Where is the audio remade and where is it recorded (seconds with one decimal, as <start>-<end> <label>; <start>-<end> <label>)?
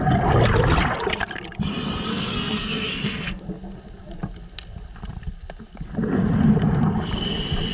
0.0-2.1 recorded; 2.1-3.4 remade; 3.4-7.7 recorded